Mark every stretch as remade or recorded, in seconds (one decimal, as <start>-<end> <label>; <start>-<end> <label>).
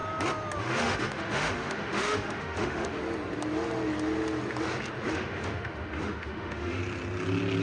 0.0-0.6 recorded; 0.6-3.0 remade; 3.0-5.1 recorded; 5.1-6.8 remade; 6.8-7.6 recorded